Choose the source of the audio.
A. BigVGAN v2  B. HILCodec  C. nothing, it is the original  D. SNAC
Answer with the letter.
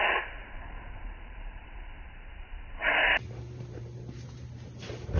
A